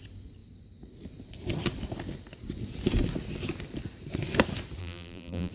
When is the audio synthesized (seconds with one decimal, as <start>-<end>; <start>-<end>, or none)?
4.8-5.5